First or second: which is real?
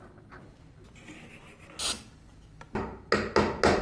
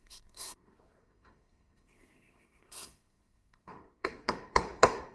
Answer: first